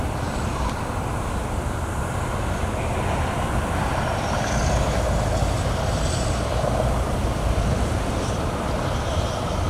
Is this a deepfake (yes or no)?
yes